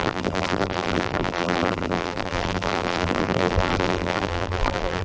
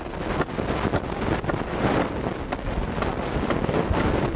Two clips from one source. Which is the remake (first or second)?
first